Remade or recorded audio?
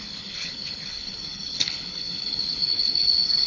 remade